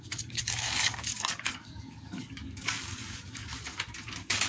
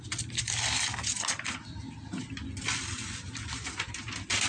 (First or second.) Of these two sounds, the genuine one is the second